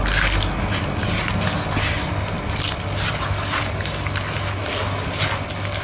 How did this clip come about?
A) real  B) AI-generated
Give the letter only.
A